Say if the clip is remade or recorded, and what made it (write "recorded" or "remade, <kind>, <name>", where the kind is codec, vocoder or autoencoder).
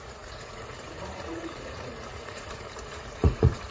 remade, vocoder, Vocos